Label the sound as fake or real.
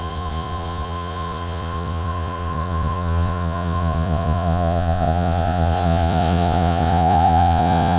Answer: fake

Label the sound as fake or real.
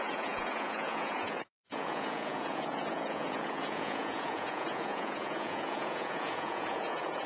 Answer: fake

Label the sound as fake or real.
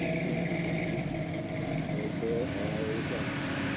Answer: fake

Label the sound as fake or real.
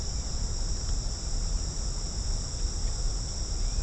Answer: real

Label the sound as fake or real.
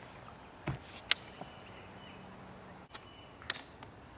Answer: real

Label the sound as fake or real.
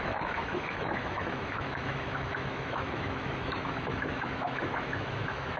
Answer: fake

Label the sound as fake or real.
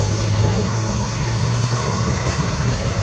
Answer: fake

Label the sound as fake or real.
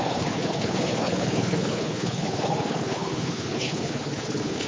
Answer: fake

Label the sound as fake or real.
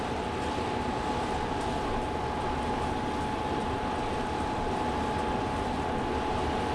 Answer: real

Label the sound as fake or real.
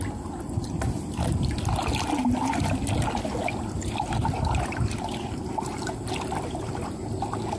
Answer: real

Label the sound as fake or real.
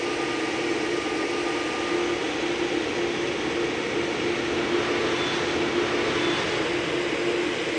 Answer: real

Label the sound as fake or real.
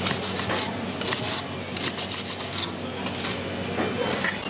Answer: real